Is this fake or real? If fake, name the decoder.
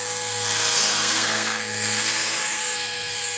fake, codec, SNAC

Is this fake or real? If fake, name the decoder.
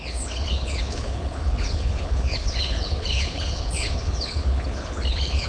fake, codec, HILCodec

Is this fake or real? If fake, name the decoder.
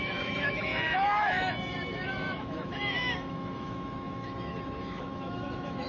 fake, autoencoder, DAC-VAE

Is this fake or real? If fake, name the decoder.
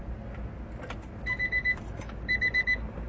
real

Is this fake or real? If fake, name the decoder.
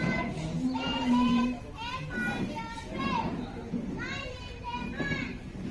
fake, vocoder, BigVGAN v2